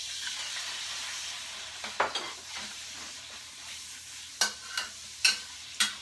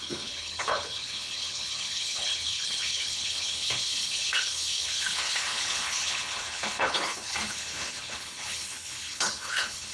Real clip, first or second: first